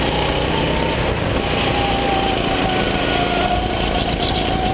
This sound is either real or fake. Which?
real